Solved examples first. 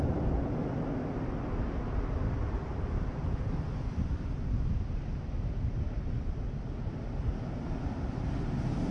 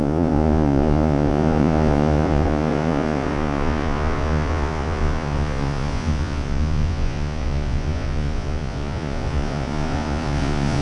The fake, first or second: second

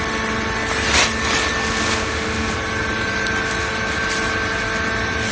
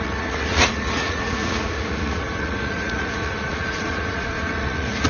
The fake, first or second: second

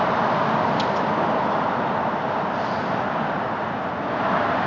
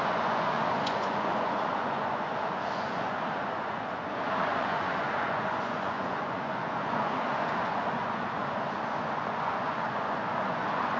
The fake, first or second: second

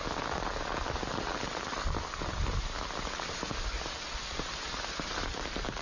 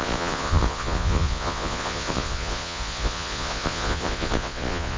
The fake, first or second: second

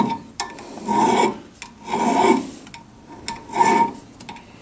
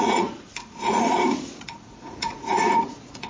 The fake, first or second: second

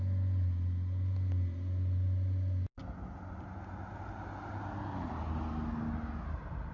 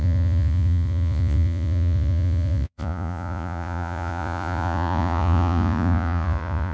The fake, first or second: second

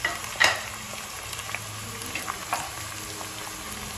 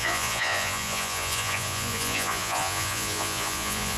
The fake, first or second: second